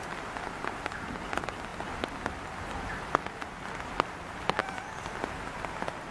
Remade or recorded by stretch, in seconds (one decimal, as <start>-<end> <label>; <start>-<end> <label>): 0.0-6.1 recorded